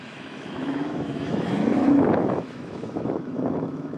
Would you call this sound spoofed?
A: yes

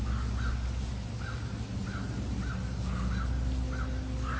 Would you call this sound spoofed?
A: no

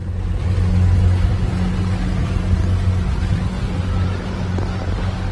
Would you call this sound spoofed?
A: no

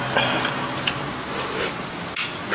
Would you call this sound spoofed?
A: no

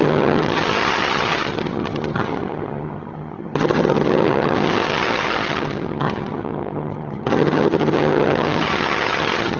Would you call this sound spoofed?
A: yes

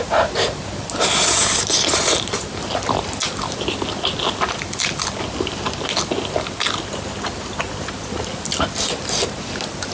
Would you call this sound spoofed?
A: no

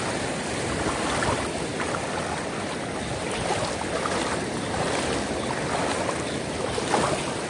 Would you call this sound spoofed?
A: no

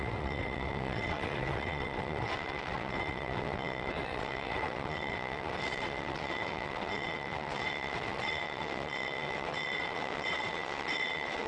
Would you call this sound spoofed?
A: yes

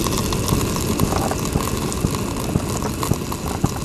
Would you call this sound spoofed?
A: no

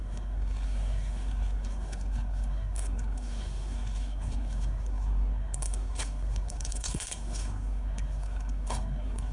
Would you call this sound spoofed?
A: yes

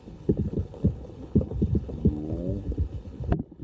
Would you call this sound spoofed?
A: yes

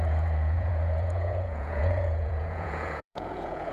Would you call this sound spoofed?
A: yes